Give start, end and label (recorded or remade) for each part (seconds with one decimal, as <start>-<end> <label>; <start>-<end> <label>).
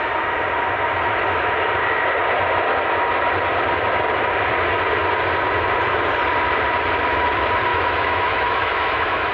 0.0-7.7 recorded; 7.7-9.3 remade